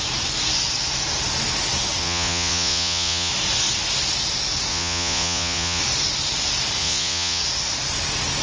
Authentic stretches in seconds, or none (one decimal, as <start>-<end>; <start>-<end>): 0.0-2.0; 3.3-4.7; 5.8-6.8; 7.4-8.4